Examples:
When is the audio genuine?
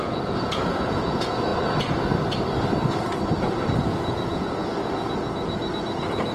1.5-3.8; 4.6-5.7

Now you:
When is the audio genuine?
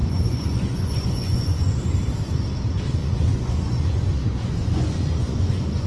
1.9-3.0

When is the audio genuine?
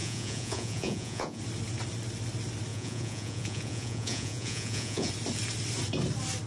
1.4-2.7; 5.1-6.5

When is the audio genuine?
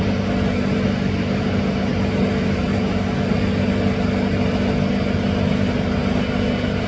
0.0-6.9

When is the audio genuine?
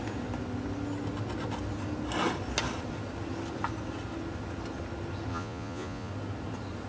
0.0-5.3; 6.1-6.9